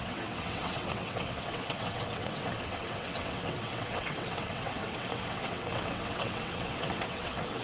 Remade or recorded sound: remade